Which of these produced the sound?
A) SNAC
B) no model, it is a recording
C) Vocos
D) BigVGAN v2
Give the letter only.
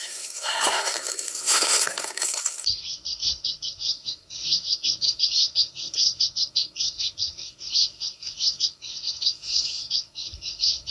A